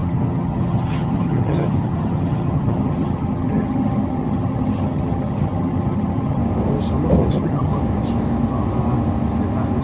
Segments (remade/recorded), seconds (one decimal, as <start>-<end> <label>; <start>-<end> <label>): 0.0-6.4 remade; 6.4-7.3 recorded; 7.3-7.7 remade; 7.7-9.8 recorded